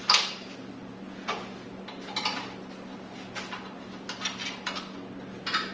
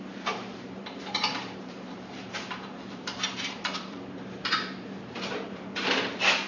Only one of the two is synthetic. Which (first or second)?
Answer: second